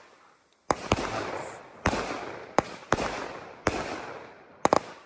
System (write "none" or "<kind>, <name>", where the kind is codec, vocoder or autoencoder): none